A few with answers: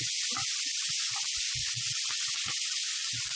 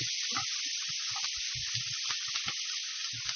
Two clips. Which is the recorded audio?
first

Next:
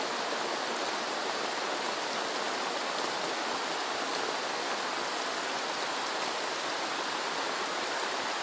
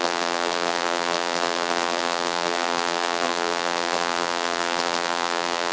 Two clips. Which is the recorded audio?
first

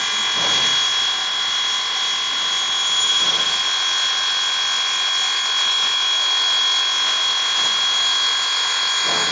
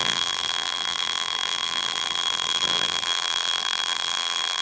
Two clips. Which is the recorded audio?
first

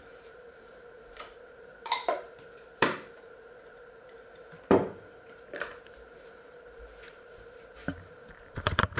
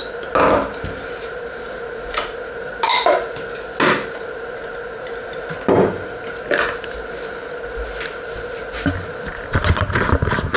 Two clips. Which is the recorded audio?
second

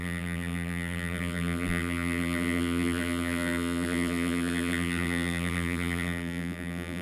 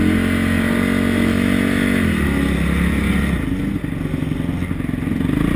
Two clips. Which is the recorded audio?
second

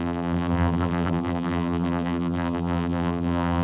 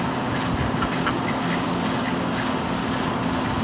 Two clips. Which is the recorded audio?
second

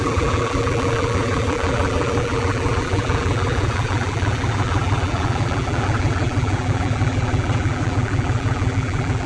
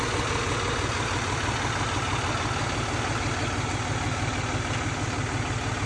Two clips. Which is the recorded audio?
second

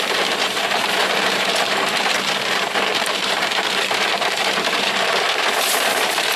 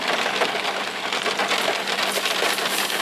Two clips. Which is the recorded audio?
second